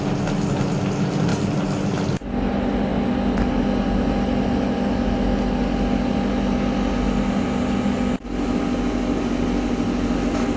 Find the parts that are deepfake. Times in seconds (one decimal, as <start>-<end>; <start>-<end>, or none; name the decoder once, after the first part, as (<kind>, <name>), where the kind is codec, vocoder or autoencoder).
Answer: none